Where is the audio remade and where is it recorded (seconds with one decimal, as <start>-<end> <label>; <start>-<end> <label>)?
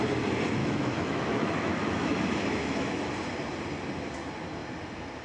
0.0-0.6 recorded; 0.6-3.1 remade; 3.1-5.2 recorded